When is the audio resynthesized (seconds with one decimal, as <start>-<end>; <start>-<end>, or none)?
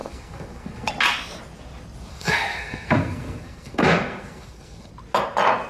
0.0-0.9; 2.1-4.9